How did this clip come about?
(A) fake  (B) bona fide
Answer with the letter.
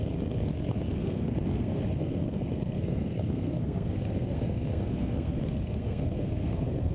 A